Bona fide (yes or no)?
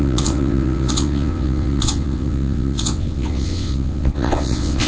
no